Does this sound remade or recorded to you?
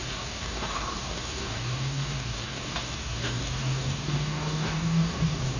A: remade